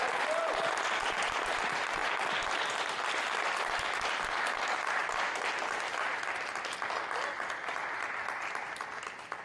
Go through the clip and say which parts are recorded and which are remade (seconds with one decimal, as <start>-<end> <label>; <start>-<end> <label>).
0.0-9.4 recorded